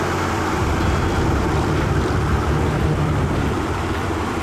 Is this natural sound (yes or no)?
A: no